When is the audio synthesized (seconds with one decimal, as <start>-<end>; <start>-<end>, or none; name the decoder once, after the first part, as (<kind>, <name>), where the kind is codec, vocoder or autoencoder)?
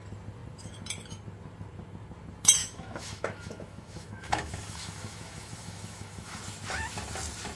2.6-6.4 (autoencoder, DAC-VAE)